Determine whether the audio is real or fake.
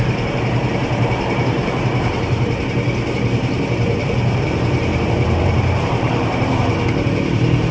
fake